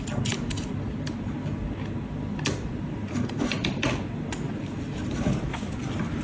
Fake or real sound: real